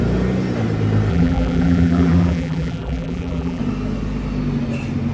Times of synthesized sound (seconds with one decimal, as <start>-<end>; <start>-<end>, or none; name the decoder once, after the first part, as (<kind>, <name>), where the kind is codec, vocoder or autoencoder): 1.1-3.6 (vocoder, BigVGAN v2)